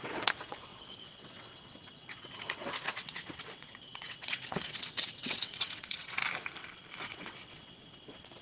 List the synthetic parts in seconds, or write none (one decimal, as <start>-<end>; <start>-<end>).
0.0-6.2; 7.0-8.4